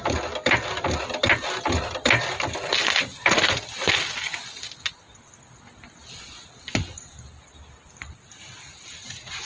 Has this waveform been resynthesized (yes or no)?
no